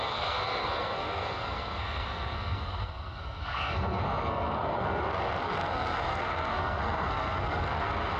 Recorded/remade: remade